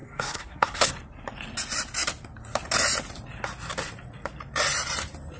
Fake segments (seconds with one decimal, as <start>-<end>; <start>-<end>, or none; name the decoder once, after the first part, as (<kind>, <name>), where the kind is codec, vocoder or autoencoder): 0.0-0.9 (codec, SNAC)